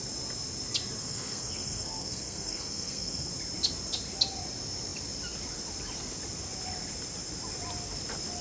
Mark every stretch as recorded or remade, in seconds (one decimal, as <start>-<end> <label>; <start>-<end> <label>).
0.0-1.0 recorded; 1.0-3.3 remade; 3.3-8.4 recorded